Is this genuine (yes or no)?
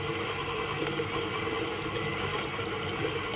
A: yes